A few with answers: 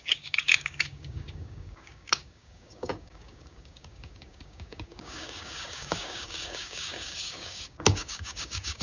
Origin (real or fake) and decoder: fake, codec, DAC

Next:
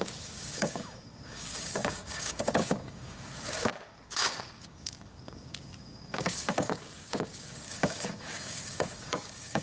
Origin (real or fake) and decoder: fake, codec, DAC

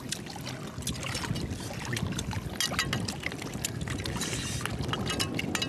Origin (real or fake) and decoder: real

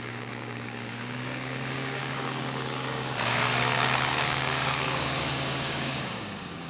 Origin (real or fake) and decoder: fake, codec, DAC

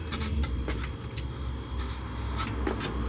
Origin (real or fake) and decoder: real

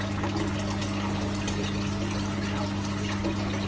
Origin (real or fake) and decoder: real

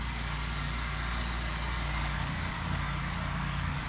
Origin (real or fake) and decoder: fake, codec, DAC